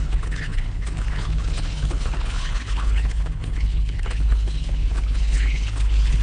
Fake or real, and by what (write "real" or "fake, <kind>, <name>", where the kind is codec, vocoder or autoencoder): fake, codec, HILCodec